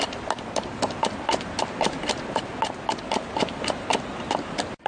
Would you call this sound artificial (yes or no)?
no